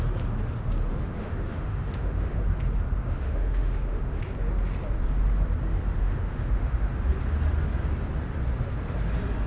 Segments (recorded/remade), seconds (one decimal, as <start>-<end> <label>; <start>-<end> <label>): 0.0-0.9 recorded; 0.9-2.4 remade; 2.4-3.0 recorded; 3.0-4.2 remade; 4.2-6.0 recorded; 6.0-6.9 remade; 6.9-9.5 recorded

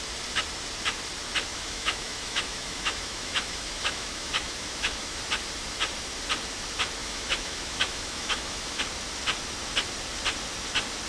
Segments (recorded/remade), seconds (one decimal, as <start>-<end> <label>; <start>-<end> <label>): 0.0-1.5 recorded; 1.5-5.2 remade; 5.2-7.0 recorded; 7.0-8.8 remade; 8.8-11.1 recorded

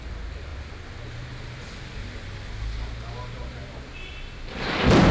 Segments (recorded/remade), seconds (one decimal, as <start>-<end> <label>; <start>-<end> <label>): 0.0-5.1 recorded

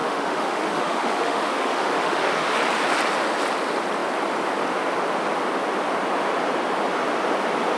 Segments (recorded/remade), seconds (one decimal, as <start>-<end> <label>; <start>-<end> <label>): 0.0-2.6 remade; 2.6-7.8 recorded

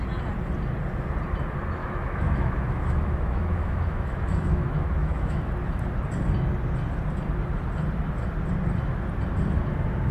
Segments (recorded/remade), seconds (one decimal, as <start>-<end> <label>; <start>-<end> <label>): 0.0-1.8 recorded; 1.8-5.5 remade; 5.5-10.1 recorded

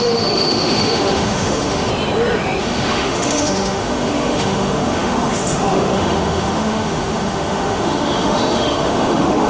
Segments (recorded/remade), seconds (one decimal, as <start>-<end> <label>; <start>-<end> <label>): 0.0-1.9 remade; 1.9-2.6 recorded; 2.6-9.5 remade

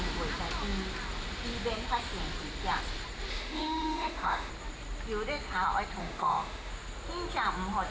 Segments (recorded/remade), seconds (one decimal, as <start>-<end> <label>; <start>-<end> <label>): 0.0-3.3 recorded; 3.3-4.5 remade; 4.5-6.0 recorded; 6.0-6.7 remade; 6.7-7.9 recorded

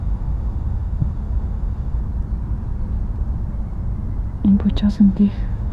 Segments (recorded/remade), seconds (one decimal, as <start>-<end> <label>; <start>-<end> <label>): 0.0-2.0 remade; 2.0-4.9 recorded; 4.9-5.7 remade